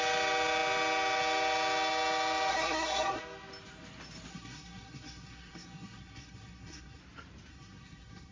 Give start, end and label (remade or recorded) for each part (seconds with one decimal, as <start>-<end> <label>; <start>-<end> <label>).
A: 0.0-2.5 recorded; 2.5-3.2 remade; 3.2-4.3 recorded; 4.3-7.0 remade; 7.0-7.5 recorded; 7.5-8.3 remade